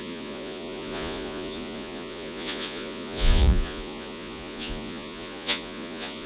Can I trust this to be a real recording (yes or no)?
no